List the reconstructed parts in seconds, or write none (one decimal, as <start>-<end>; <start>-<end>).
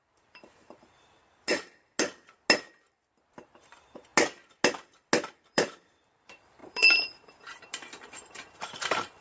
0.0-1.2; 3.3-4.1; 5.3-9.2